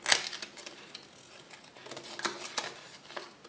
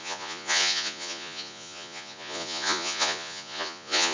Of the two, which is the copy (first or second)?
second